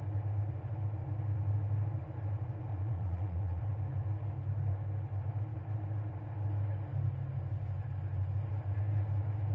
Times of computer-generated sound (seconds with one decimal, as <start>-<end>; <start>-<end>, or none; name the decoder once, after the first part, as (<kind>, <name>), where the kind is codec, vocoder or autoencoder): 2.7-3.6 (vocoder, Vocos)

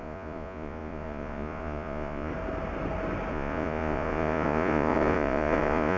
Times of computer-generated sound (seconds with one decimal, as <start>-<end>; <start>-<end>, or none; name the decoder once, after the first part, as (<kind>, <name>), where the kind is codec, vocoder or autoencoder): 0.0-2.3 (vocoder, Vocos); 3.3-6.0

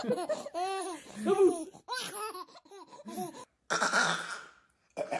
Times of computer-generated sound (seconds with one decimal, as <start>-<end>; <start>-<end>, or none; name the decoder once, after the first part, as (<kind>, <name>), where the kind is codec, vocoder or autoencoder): none

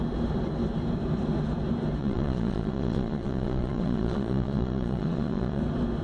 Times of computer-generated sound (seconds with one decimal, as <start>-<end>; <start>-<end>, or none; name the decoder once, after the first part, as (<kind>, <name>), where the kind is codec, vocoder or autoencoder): 2.0-5.6 (vocoder, Vocos)